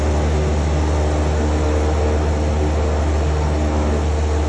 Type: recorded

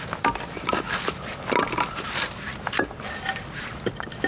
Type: recorded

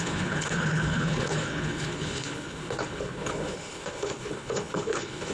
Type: remade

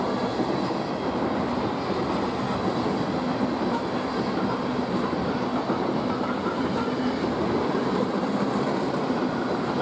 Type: recorded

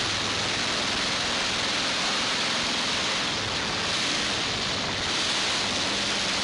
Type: recorded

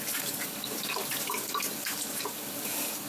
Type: remade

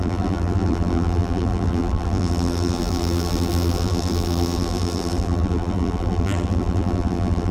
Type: remade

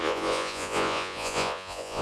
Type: remade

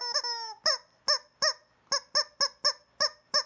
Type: recorded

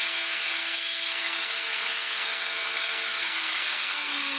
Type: remade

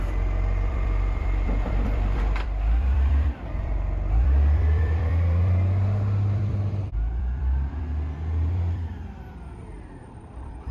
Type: remade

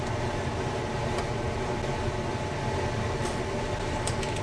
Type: recorded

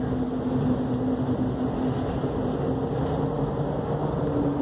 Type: recorded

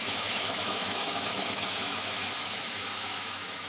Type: remade